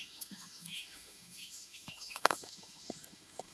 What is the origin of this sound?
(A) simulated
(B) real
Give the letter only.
A